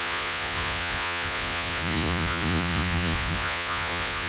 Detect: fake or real fake